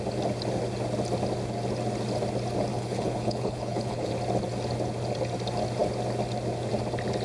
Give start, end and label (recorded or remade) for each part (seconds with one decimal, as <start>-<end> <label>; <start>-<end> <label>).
0.0-2.7 recorded; 2.7-4.1 remade; 4.1-7.2 recorded